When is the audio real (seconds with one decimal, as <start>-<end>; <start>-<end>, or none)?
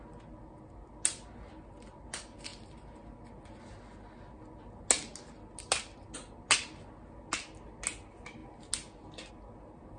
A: 0.0-10.0